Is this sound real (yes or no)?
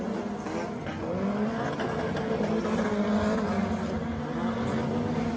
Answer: yes